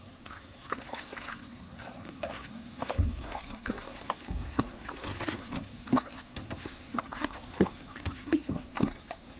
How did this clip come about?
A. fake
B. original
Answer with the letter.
A